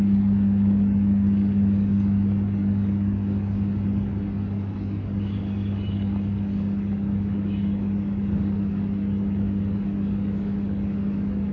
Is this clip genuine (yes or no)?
no